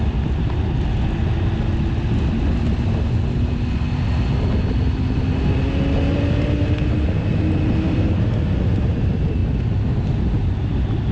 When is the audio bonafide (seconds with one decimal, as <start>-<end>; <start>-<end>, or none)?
0.0-11.1